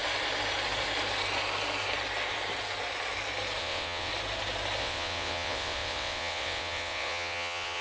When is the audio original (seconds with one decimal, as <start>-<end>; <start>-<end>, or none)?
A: 0.0-3.6; 4.1-4.8

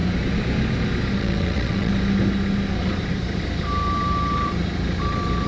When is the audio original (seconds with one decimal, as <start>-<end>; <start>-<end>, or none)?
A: 0.0-1.2; 1.9-5.5